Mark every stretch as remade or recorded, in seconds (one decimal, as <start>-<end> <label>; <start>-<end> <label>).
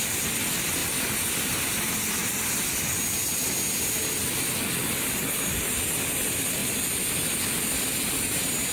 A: 0.0-8.7 recorded